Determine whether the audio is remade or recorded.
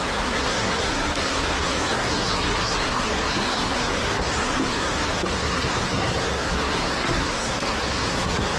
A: remade